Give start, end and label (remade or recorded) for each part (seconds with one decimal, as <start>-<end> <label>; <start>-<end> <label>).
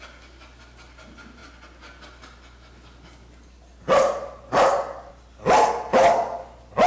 0.0-6.9 recorded